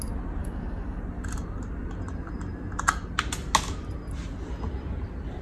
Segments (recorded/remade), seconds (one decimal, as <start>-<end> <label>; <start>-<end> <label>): 0.0-0.4 recorded; 0.4-1.0 remade; 1.0-5.4 recorded